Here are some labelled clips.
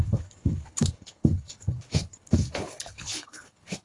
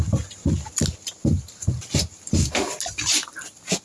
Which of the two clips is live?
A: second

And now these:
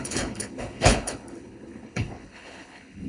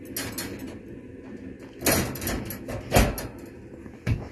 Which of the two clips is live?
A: second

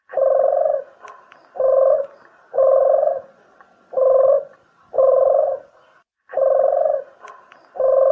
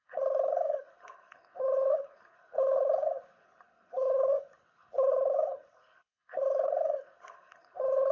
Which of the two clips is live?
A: first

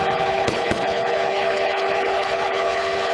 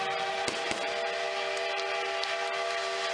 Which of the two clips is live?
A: second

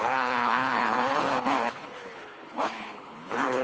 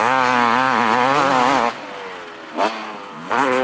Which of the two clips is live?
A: second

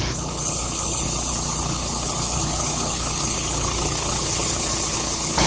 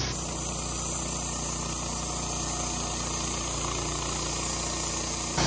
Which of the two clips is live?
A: second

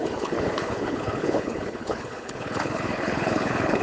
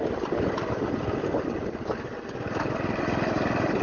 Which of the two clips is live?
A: second